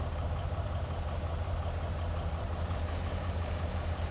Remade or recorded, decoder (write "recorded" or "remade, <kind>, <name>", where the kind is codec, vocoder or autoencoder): remade, vocoder, BigVGAN v2